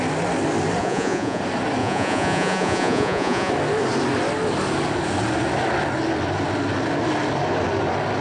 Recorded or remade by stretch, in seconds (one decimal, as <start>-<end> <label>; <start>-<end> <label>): 0.0-0.8 recorded; 0.8-1.4 remade; 1.4-1.8 recorded; 1.8-3.5 remade; 3.5-8.2 recorded